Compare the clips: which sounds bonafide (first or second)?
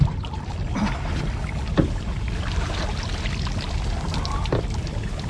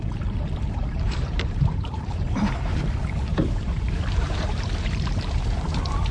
first